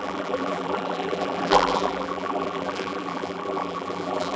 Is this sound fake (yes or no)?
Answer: yes